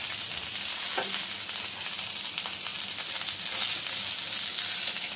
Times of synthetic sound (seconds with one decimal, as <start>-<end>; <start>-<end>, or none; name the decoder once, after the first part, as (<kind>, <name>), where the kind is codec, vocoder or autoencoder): none